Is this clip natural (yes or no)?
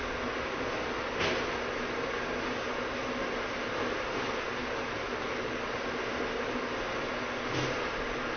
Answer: yes